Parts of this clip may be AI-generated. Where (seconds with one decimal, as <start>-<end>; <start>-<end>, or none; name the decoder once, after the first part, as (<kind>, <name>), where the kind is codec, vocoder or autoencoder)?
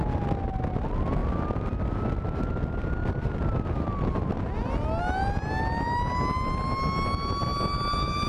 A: none